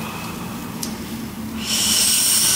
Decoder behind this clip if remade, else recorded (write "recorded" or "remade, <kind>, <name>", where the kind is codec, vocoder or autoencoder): recorded